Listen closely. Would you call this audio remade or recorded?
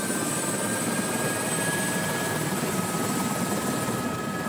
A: recorded